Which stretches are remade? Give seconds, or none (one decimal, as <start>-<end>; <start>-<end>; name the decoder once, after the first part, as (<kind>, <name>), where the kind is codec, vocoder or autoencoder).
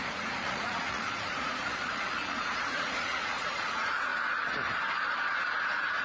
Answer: 0.0-4.1 (vocoder, Vocos); 5.6-6.0